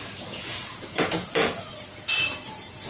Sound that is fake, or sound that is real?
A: fake